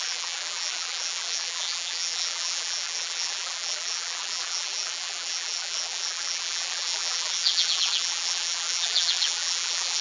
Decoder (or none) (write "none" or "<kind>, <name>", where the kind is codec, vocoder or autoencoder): vocoder, BigVGAN v2